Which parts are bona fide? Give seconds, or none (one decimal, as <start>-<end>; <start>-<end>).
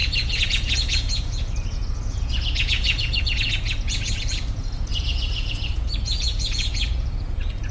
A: none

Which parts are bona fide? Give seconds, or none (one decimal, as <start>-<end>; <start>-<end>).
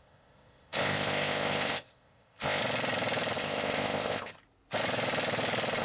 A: 2.6-3.4; 4.3-5.8